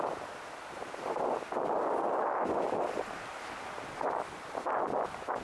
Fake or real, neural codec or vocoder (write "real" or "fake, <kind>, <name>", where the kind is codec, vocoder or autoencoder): real